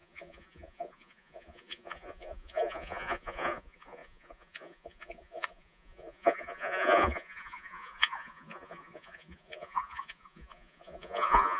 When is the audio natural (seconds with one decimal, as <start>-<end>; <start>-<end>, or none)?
none